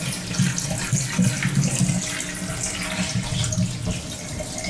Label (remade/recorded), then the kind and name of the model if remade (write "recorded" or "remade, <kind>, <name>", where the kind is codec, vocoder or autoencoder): recorded